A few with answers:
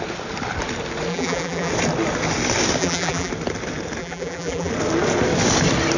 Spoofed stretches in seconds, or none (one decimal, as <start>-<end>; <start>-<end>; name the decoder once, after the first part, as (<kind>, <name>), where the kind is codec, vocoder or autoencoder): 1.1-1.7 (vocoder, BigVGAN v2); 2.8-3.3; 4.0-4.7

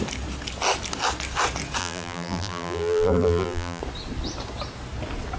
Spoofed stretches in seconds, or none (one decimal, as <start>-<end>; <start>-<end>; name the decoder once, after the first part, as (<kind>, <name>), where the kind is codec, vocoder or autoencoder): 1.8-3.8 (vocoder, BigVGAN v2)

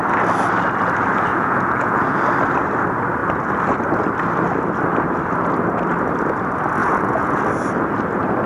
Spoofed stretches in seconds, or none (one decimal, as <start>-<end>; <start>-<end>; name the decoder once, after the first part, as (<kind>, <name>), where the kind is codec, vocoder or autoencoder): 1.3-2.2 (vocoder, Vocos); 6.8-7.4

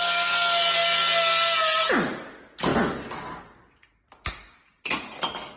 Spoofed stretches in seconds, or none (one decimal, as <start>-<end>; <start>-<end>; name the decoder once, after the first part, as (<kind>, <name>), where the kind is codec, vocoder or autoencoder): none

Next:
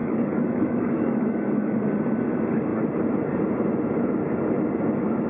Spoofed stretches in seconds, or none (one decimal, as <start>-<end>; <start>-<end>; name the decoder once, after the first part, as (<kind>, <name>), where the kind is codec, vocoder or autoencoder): 0.0-2.0 (codec, DAC)

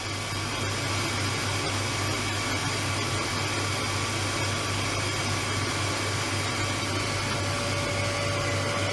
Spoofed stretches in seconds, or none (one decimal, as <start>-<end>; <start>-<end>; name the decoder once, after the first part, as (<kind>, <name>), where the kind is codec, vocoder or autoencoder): none